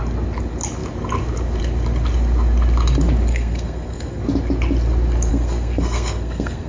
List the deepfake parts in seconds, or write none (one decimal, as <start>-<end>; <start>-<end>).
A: 3.3-4.2; 5.3-6.7